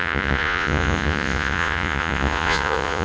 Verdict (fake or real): fake